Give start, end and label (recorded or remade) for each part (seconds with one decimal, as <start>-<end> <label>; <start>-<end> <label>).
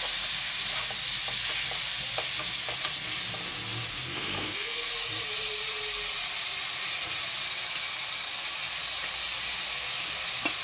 0.0-3.9 recorded; 3.9-4.9 remade; 4.9-10.6 recorded